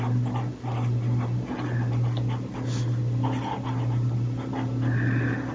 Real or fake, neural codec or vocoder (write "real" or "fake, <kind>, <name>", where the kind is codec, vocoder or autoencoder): real